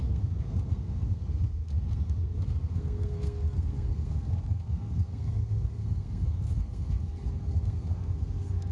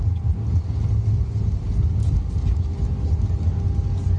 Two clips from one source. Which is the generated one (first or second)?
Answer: first